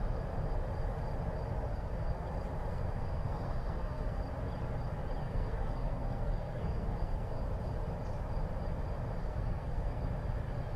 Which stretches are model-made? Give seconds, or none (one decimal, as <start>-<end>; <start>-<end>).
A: 1.7-2.3; 2.7-4.2; 5.2-7.3; 9.2-10.0